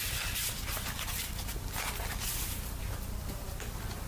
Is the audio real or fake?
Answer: real